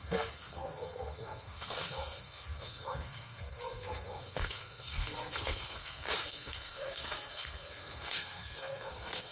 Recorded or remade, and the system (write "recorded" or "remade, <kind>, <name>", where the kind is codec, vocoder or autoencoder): remade, codec, SNAC